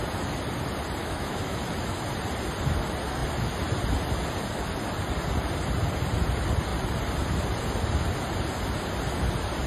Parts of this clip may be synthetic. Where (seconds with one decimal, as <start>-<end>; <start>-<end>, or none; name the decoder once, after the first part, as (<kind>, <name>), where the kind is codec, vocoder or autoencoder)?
1.0-1.6 (autoencoder, DAC-VAE)